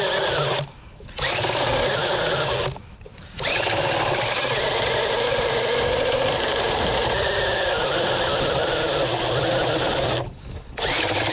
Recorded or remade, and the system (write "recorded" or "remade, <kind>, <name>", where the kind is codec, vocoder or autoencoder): recorded